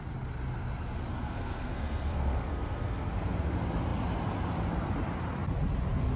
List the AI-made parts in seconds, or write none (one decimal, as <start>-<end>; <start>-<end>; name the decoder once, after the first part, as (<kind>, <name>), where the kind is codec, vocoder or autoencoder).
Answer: 1.1-3.1 (codec, SNAC)